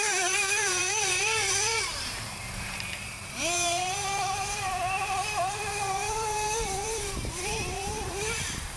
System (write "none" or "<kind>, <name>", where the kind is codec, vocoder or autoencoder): vocoder, BigVGAN v2